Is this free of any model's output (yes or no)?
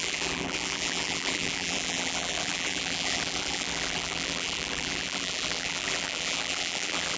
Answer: no